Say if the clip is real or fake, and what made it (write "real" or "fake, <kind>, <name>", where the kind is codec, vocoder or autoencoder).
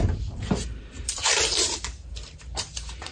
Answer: fake, vocoder, BigVGAN v2